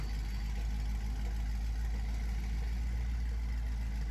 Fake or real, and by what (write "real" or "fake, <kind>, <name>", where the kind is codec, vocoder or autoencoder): real